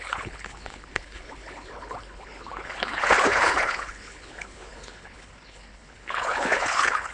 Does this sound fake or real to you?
fake